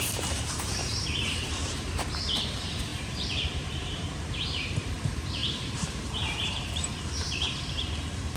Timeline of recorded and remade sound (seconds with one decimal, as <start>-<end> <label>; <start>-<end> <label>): 0.0-8.4 remade